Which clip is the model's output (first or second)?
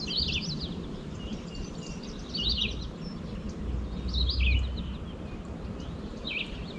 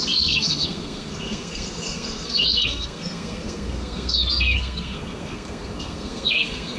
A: second